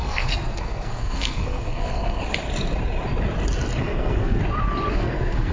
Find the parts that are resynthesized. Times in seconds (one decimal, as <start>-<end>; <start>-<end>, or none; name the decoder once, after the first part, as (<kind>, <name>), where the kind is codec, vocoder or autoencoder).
0.0-2.2 (codec, SNAC); 3.8-4.4; 4.9-5.5